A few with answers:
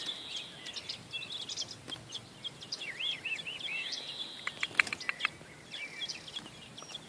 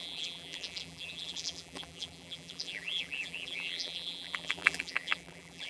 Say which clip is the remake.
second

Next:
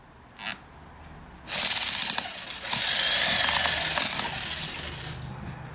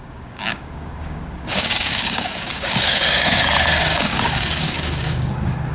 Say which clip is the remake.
second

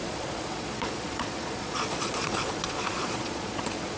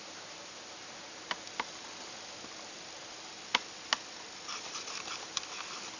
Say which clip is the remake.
first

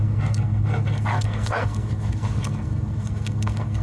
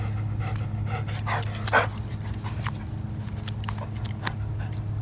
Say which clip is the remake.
first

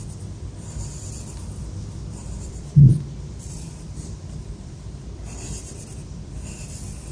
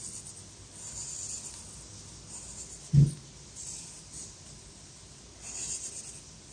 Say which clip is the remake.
first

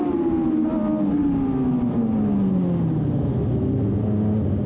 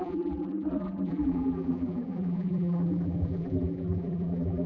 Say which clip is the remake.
second